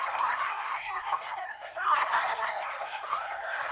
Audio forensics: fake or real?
fake